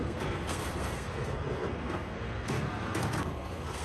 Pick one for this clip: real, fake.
fake